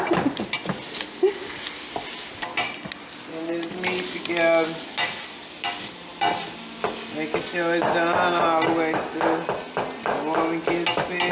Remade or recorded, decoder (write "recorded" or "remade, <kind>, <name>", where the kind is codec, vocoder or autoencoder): recorded